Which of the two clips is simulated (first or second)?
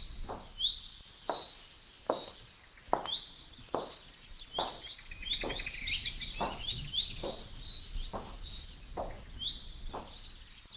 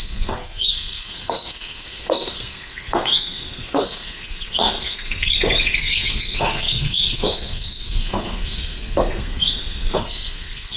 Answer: second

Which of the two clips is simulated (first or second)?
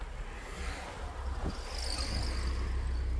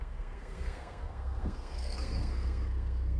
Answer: second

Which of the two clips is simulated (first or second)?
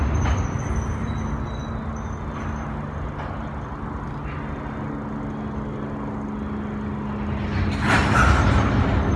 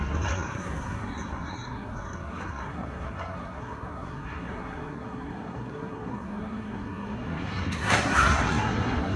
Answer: second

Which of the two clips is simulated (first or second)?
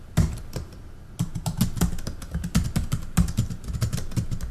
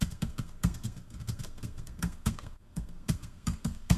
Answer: second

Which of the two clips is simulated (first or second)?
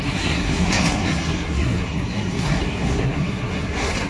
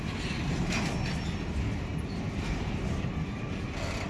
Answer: first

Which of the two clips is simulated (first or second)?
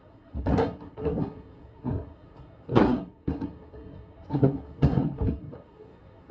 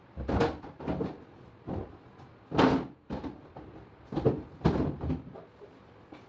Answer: first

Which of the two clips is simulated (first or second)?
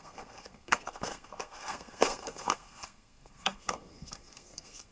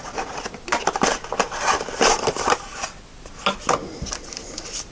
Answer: first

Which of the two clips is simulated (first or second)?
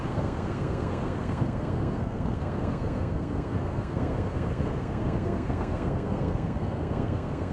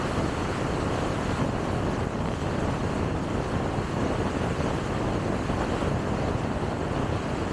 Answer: first